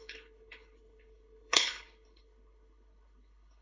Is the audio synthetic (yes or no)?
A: yes